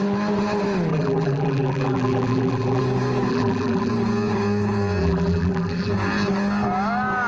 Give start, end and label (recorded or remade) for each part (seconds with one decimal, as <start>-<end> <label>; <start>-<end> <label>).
0.0-0.9 recorded; 0.9-2.8 remade; 2.8-3.3 recorded; 3.3-3.9 remade; 3.9-5.0 recorded; 5.0-5.9 remade; 5.9-7.3 recorded

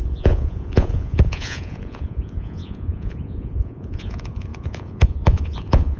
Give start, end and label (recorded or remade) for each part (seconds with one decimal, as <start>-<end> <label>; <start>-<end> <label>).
0.0-6.0 remade

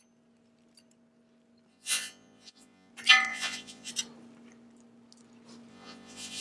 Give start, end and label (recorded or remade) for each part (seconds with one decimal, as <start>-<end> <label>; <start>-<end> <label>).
0.0-1.7 recorded; 1.7-2.9 remade; 2.9-3.3 recorded; 3.3-3.9 remade; 3.9-5.7 recorded; 5.7-6.4 remade

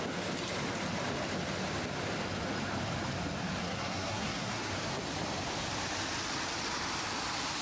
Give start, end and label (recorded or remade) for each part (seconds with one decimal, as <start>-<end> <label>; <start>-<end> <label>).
0.0-3.6 recorded; 3.6-4.7 remade; 4.7-7.6 recorded

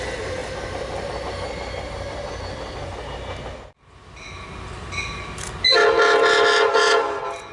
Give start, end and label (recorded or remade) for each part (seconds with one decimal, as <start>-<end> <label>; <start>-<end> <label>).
0.0-7.5 recorded

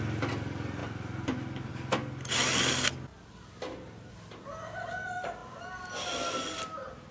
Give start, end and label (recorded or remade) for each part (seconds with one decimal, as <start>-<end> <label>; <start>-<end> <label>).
0.0-7.1 recorded